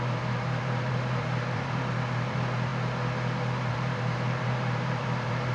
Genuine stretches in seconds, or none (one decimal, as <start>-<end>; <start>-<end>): 2.7-3.7